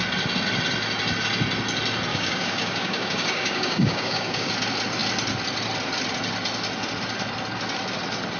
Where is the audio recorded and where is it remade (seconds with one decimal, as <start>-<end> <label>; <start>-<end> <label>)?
0.0-2.1 recorded; 2.1-4.5 remade; 4.5-8.4 recorded